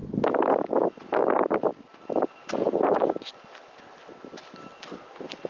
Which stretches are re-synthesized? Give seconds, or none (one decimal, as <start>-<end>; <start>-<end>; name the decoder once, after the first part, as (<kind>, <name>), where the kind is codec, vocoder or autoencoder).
none